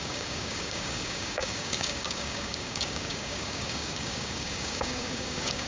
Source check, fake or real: fake